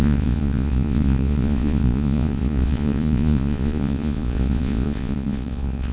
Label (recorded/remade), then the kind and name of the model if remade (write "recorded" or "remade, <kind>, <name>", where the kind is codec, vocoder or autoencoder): remade, vocoder, Vocos